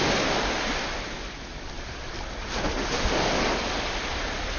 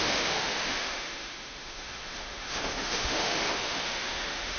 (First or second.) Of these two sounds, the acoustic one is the first